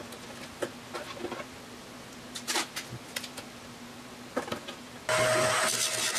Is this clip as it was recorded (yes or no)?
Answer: yes